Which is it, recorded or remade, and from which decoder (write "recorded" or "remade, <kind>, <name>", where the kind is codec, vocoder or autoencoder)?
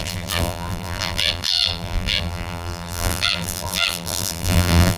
remade, vocoder, BigVGAN v2